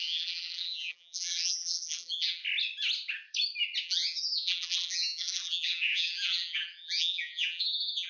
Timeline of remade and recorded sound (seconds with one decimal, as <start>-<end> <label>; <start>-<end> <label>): 0.0-2.4 remade; 2.4-3.8 recorded; 3.8-8.1 remade